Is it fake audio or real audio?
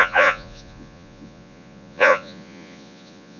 fake